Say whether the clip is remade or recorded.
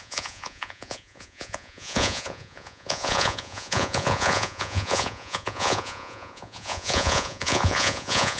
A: remade